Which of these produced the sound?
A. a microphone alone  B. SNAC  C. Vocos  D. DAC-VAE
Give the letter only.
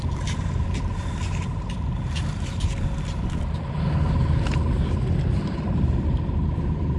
A